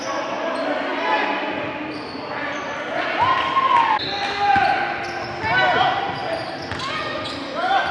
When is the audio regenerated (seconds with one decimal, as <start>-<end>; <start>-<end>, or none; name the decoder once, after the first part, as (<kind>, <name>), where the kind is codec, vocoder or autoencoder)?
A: none